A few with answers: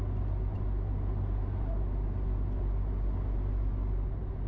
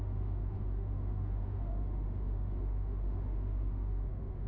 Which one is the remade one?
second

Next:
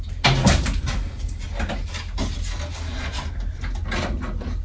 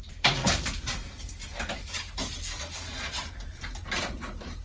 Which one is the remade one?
second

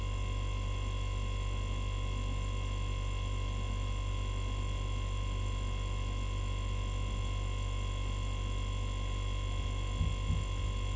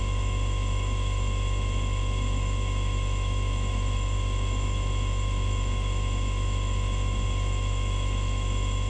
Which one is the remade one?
second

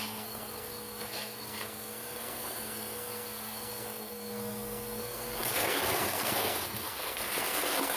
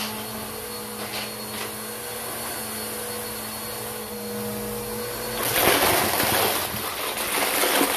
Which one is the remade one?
first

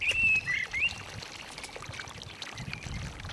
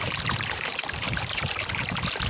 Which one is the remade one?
second